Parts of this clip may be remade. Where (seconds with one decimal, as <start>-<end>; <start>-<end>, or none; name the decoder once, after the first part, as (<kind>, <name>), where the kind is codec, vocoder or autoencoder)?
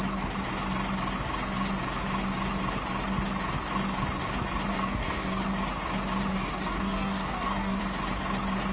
4.7-5.4 (codec, DAC); 6.3-7.8